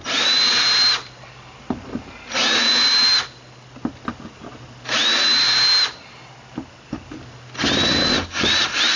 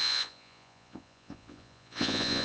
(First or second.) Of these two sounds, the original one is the first